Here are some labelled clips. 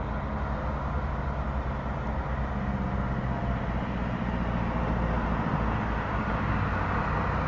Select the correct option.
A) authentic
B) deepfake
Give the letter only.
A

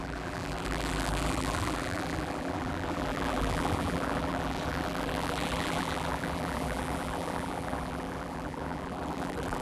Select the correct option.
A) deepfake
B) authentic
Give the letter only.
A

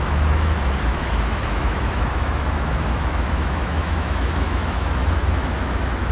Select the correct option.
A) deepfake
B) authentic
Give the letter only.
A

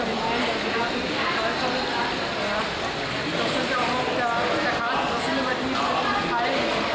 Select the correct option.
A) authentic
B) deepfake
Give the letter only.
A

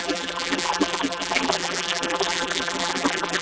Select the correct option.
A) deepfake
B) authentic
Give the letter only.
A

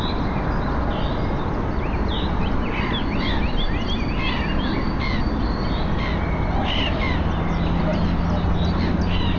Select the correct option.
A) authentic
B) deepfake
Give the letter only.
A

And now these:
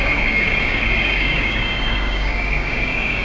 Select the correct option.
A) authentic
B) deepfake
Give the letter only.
B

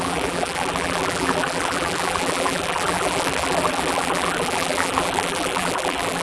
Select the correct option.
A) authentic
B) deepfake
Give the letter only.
B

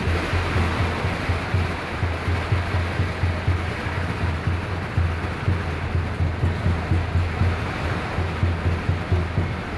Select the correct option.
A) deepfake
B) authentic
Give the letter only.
B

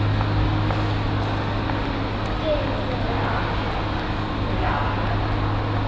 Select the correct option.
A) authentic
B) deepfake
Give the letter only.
A